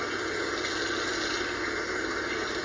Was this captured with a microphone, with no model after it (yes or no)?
yes